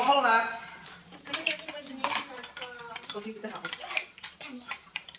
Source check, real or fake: fake